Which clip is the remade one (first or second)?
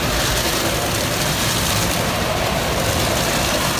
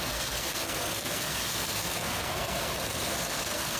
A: second